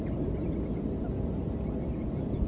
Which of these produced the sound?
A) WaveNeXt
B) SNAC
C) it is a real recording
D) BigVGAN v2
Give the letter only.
C